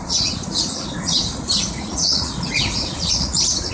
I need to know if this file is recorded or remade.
remade